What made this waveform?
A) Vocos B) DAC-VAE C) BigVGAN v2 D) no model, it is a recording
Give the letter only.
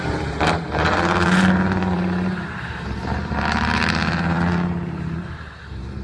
C